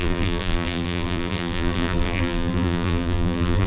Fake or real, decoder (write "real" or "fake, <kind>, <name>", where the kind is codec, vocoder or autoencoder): fake, vocoder, BigVGAN v2